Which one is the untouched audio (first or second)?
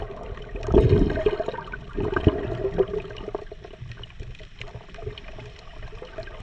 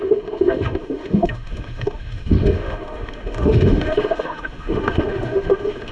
first